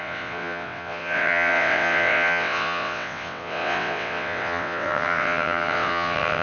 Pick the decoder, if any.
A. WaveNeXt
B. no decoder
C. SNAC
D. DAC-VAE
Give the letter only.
A